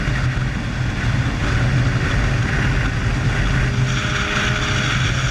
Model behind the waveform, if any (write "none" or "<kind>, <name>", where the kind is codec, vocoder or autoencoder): none